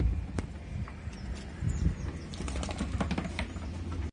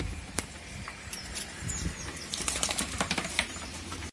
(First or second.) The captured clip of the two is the first